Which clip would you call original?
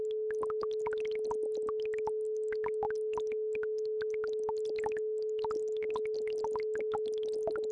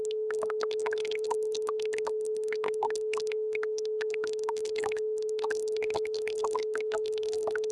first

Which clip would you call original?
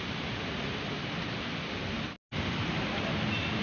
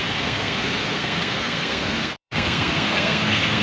first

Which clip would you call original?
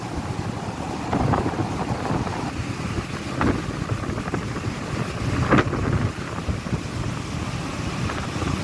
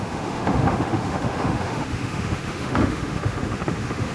first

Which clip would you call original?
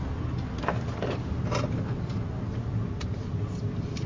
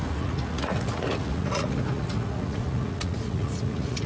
first